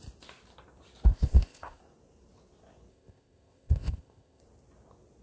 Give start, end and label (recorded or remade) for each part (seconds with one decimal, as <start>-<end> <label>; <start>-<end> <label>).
0.0-1.1 recorded; 1.1-1.8 remade; 1.8-2.9 recorded; 2.9-4.4 remade; 4.4-5.2 recorded